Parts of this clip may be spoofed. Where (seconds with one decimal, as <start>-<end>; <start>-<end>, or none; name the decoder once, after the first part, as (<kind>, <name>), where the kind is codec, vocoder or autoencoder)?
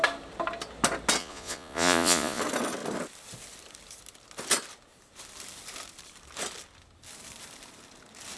1.2-2.4 (vocoder, Vocos)